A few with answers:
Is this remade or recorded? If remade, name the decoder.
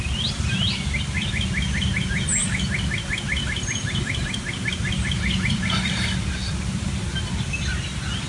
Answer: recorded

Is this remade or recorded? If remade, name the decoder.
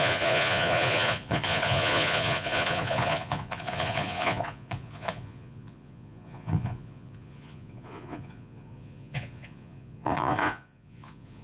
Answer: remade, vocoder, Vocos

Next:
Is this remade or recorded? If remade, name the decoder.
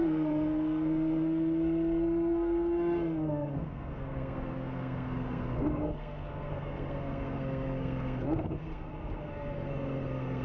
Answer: remade, codec, SNAC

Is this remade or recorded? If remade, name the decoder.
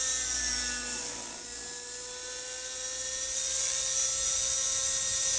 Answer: recorded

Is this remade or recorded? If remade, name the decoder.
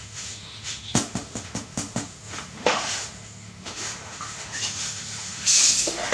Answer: remade, autoencoder, DAC-VAE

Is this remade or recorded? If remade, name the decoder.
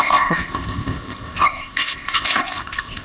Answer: remade, codec, ZipCodec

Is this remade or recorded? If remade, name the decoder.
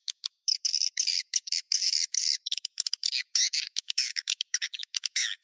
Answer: remade, autoencoder, DAC-VAE